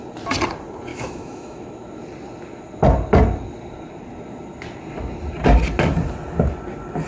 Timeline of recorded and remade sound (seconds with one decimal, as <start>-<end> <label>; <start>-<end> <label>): 0.0-0.9 recorded; 0.9-1.7 remade; 1.7-7.1 recorded